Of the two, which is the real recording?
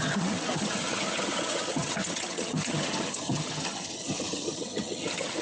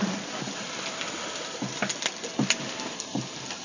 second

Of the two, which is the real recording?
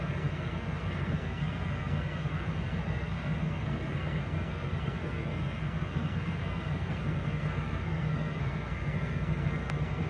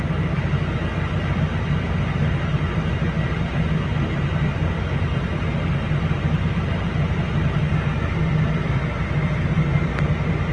second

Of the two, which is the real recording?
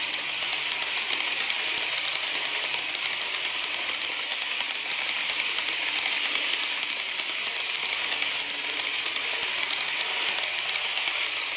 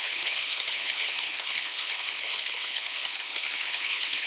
first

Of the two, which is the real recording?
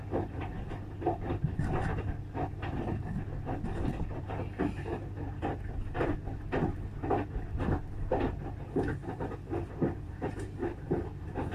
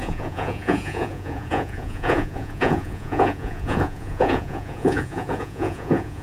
first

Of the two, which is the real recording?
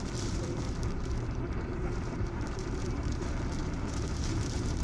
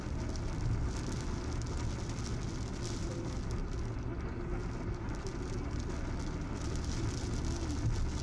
second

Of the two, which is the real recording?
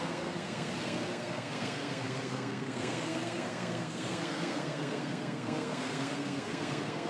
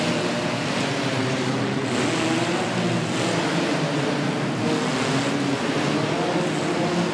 second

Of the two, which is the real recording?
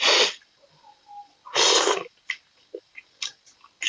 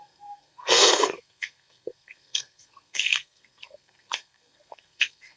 first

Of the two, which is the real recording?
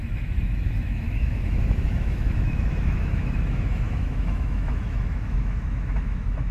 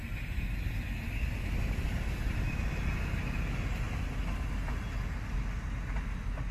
second